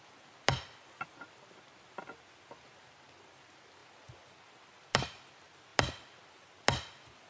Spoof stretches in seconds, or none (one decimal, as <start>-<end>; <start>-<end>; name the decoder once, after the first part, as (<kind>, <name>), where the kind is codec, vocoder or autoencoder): none